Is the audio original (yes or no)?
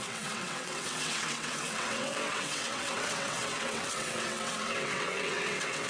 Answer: no